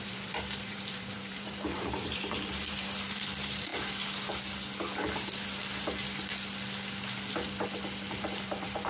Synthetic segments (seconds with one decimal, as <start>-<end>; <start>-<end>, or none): 0.0-3.7; 8.2-8.9

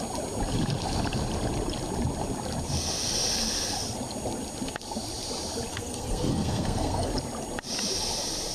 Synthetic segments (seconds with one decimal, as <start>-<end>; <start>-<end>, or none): 5.7-7.1

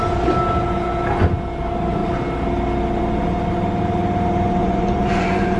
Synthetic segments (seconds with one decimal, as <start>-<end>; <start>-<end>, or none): 4.6-5.6

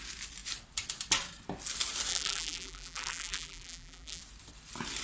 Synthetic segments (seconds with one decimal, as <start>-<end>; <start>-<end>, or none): 2.1-4.2

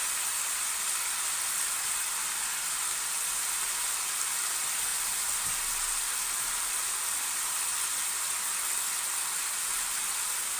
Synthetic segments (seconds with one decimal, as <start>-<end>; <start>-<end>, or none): none

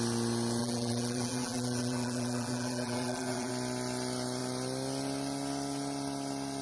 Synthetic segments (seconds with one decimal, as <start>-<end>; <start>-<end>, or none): 0.6-3.5